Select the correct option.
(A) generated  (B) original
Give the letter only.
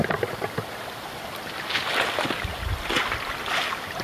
B